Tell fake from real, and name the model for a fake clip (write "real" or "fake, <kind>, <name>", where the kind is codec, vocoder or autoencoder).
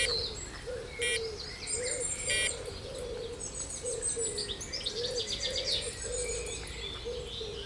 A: real